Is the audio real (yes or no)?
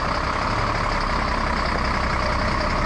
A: yes